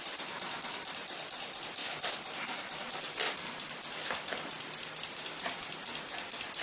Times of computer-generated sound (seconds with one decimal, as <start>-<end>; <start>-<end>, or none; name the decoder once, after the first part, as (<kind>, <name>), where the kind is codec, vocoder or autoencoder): none